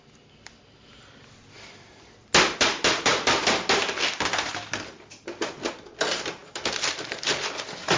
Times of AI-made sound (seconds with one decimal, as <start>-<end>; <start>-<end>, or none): 6.4-7.0